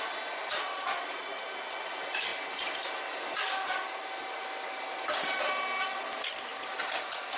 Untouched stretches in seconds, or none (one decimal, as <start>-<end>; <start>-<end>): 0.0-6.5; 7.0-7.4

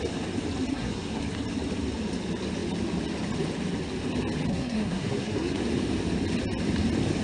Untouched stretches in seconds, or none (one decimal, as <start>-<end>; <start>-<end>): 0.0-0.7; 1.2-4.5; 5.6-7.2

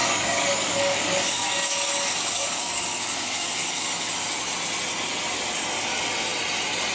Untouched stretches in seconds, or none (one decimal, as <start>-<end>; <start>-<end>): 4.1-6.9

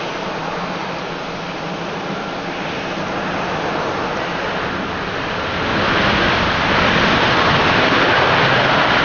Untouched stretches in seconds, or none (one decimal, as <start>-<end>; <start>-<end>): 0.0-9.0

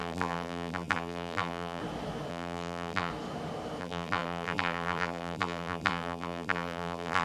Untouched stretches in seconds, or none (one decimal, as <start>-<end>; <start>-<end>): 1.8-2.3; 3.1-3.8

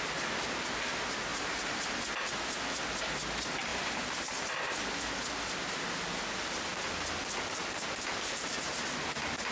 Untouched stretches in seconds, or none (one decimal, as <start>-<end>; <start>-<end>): 0.0-1.3; 1.9-3.7; 4.3-9.5

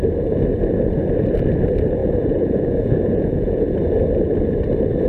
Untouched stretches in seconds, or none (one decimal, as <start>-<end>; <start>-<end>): 0.0-2.0; 3.6-5.1